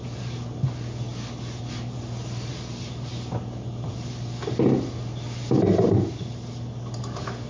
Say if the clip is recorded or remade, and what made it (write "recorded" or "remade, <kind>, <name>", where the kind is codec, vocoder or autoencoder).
recorded